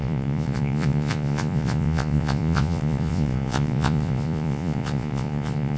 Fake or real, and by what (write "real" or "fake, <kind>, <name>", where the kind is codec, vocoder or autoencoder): fake, vocoder, Vocos